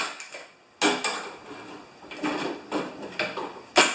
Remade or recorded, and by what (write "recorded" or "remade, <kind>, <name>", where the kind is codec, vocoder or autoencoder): recorded